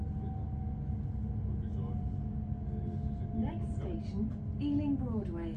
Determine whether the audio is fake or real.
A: real